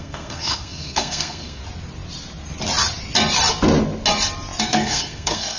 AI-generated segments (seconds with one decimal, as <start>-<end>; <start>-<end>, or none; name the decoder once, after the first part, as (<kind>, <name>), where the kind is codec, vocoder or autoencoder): 0.0-1.6 (codec, SNAC); 4.6-5.6